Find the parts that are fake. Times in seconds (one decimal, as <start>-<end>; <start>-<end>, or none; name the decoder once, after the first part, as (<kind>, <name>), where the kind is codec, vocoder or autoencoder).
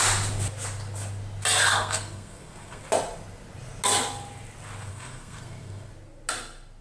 1.7-2.8 (codec, SNAC); 4.9-5.9